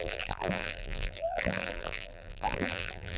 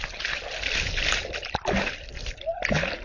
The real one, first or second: second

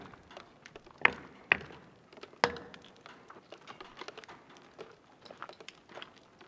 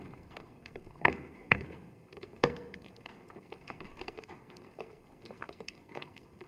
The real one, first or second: first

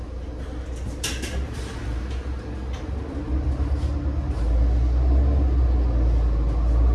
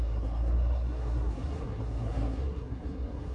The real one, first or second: first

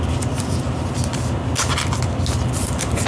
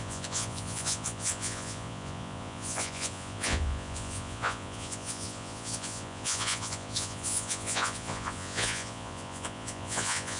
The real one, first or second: first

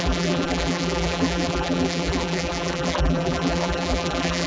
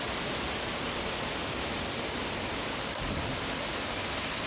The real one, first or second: second